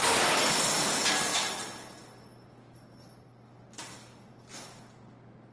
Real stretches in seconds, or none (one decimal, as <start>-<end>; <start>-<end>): 0.0-5.5